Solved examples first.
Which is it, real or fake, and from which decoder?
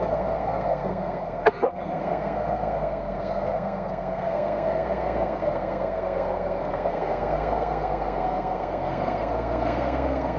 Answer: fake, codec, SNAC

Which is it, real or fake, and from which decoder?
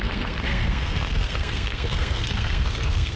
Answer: fake, codec, SNAC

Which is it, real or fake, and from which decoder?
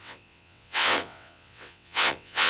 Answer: fake, vocoder, WaveNeXt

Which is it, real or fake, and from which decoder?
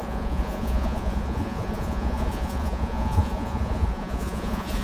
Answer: fake, vocoder, Vocos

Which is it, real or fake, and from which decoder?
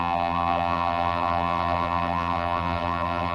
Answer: fake, vocoder, BigVGAN v2